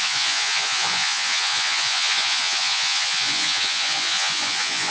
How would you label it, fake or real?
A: fake